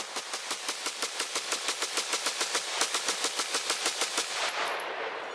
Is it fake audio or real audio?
real